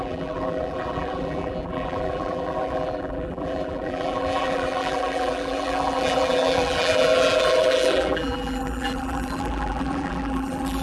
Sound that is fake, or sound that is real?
fake